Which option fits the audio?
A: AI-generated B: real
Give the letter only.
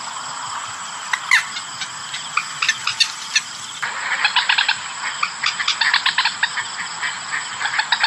B